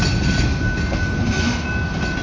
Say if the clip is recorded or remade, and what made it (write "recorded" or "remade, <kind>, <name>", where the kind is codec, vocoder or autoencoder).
recorded